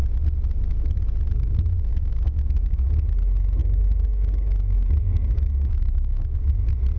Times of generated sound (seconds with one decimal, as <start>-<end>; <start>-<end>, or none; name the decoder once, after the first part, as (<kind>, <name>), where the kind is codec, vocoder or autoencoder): 1.9-2.8 (codec, DAC); 3.6-6.5